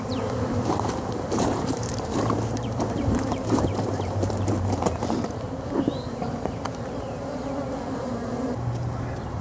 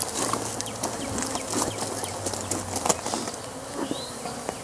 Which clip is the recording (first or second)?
second